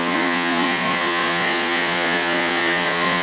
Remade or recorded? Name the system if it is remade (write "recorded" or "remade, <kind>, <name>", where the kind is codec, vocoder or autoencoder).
remade, vocoder, Vocos